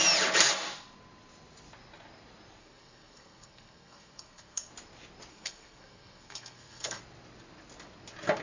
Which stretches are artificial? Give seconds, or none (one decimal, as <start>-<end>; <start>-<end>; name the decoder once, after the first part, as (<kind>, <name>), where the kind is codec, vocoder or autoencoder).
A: 2.6-4.7 (codec, SNAC); 5.3-7.0